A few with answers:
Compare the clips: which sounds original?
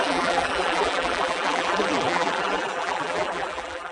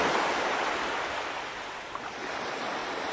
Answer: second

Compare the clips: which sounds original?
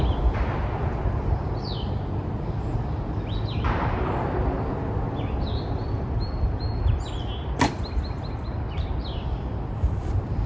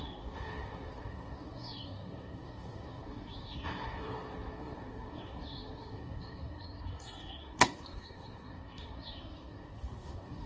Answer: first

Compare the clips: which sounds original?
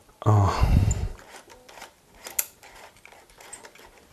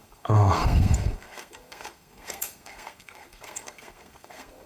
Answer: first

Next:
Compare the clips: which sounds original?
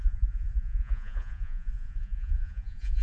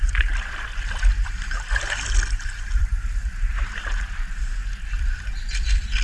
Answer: second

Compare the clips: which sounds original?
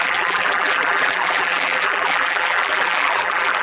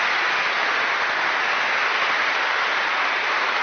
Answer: second